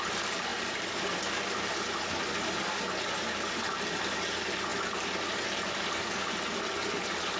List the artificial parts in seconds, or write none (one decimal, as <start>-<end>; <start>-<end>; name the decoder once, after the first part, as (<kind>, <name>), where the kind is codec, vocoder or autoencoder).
none